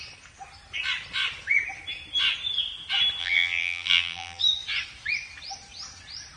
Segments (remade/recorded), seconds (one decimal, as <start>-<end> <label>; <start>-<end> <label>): 0.0-3.2 recorded; 3.2-4.4 remade; 4.4-6.4 recorded